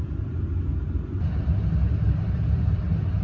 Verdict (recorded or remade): recorded